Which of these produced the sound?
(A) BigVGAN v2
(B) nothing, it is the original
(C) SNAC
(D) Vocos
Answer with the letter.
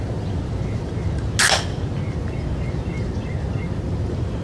B